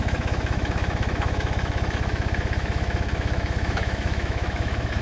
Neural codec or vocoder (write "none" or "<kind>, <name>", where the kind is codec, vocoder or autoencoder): autoencoder, DAC-VAE